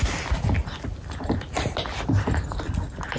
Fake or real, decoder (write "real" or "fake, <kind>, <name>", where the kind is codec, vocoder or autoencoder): real